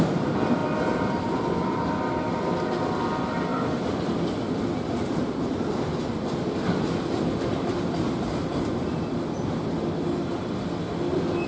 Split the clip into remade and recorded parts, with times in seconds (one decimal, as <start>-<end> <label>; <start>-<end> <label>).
0.0-0.6 recorded; 0.6-1.3 remade; 1.3-8.5 recorded; 8.5-9.2 remade; 9.2-11.5 recorded